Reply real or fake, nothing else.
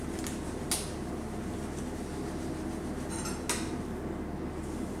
real